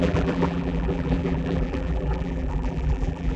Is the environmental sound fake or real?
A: fake